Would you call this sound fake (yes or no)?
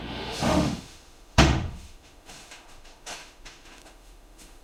yes